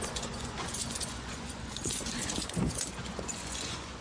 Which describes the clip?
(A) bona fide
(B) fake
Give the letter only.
B